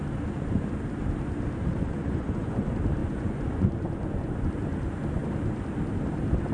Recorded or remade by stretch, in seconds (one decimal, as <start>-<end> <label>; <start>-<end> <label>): 0.0-2.0 recorded; 2.0-2.6 remade; 2.6-3.0 recorded; 3.0-4.5 remade; 4.5-6.5 recorded